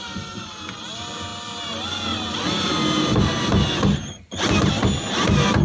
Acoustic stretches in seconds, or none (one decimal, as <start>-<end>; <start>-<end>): 0.0-5.6